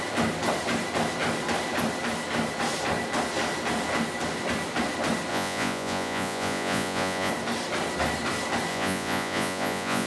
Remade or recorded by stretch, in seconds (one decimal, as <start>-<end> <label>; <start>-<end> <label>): 0.0-5.3 recorded; 5.3-7.3 remade; 7.3-8.7 recorded; 8.7-10.1 remade